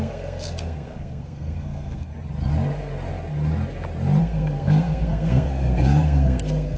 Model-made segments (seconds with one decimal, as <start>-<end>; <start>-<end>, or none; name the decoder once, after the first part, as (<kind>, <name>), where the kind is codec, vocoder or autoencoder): 0.0-2.1 (codec, SNAC); 4.2-6.8